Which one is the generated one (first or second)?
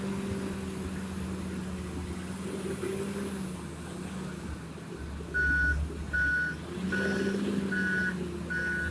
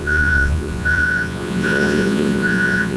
second